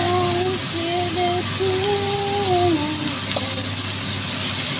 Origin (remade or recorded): recorded